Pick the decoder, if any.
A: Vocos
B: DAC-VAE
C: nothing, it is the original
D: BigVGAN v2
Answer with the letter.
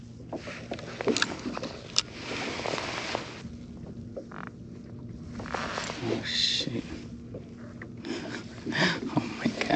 C